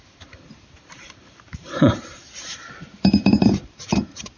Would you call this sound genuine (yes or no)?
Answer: no